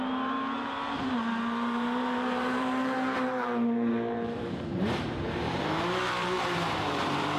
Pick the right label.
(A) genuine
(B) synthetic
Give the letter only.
B